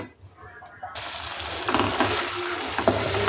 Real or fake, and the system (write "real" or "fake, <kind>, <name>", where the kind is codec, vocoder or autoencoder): real